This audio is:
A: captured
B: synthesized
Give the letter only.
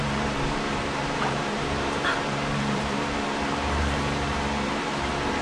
B